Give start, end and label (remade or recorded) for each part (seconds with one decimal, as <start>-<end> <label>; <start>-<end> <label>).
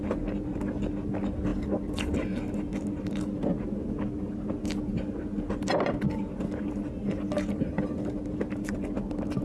0.0-9.4 recorded